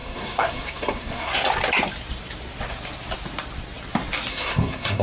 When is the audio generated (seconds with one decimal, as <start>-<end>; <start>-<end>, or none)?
0.0-1.3; 4.3-5.0